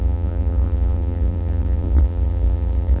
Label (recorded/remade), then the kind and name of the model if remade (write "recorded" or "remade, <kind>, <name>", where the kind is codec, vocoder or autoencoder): remade, vocoder, BigVGAN v2